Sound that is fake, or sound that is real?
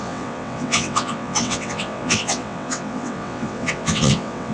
fake